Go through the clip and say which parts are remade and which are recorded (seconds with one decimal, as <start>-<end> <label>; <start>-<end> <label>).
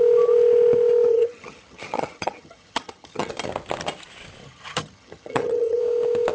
0.0-1.1 recorded; 1.1-3.3 remade; 3.3-4.4 recorded; 4.4-5.8 remade; 5.8-6.3 recorded